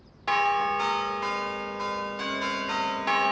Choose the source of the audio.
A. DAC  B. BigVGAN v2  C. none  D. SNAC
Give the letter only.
C